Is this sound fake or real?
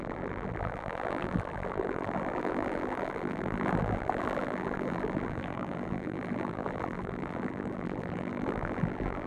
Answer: fake